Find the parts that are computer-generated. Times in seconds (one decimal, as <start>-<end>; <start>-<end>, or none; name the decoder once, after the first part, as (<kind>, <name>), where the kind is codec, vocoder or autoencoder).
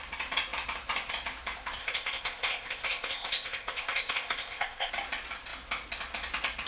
1.8-4.9 (codec, ZipCodec)